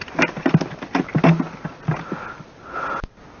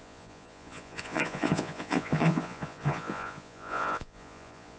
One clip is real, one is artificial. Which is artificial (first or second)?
second